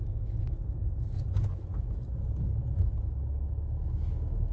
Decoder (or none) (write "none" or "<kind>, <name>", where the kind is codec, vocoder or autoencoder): none